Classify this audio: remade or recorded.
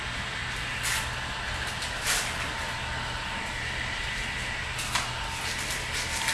recorded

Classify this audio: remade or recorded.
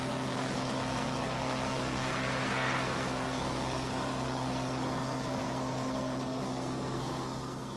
remade